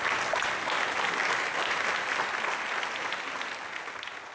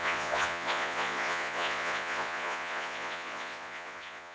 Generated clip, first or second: second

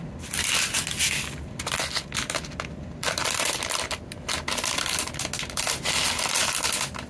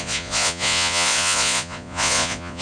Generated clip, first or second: second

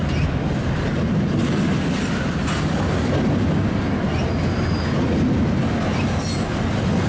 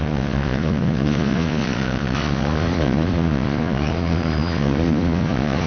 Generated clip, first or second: second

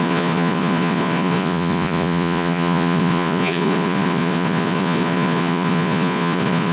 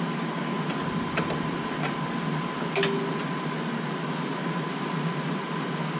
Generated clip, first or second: first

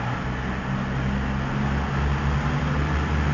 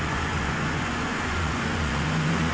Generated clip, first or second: second